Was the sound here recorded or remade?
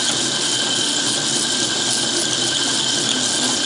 recorded